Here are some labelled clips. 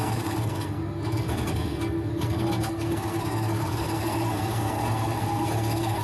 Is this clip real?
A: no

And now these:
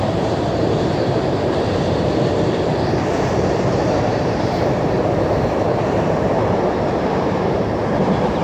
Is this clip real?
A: no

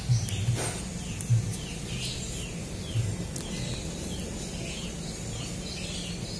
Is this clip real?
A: yes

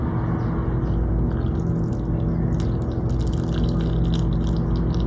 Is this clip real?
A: yes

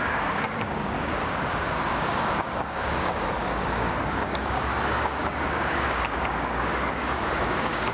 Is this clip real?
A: no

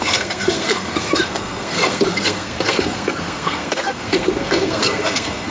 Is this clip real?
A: no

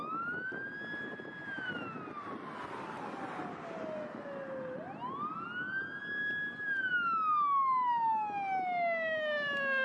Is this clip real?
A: yes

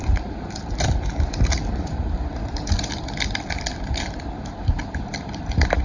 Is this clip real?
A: no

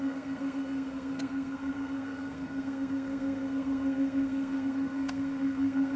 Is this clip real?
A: no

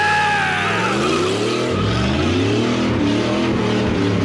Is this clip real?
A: yes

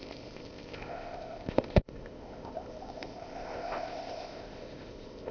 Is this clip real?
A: no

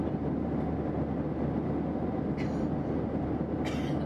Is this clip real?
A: yes